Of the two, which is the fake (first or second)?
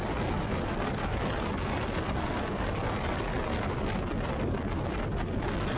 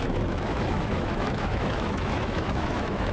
second